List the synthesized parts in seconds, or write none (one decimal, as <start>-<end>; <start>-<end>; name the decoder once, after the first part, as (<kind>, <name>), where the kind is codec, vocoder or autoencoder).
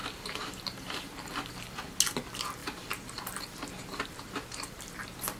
0.0-1.3 (vocoder, BigVGAN v2); 2.6-4.8